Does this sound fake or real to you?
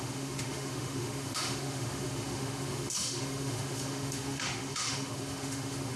fake